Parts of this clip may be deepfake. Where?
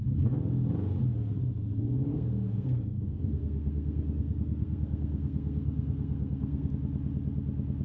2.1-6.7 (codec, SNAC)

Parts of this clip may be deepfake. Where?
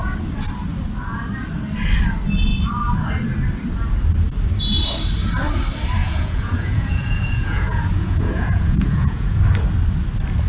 6.0-9.4 (vocoder, Vocos)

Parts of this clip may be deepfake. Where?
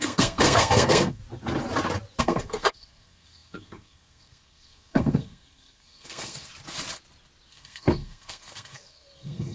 0.0-1.2 (codec, SNAC); 2.2-6.5; 7.5-9.5